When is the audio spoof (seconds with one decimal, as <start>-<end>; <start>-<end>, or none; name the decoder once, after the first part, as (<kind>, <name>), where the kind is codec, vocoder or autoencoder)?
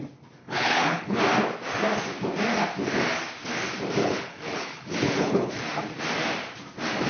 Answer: 0.4-1.2 (codec, HILCodec); 4.0-5.5